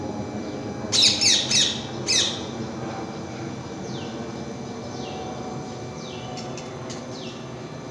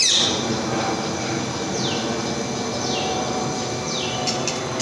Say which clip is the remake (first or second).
second